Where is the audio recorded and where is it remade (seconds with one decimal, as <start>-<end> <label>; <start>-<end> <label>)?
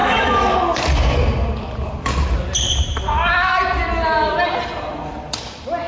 0.0-0.6 remade; 0.6-5.9 recorded